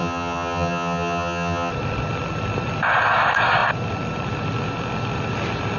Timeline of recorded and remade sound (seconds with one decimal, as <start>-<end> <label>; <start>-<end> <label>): 0.0-1.7 remade; 1.7-5.8 recorded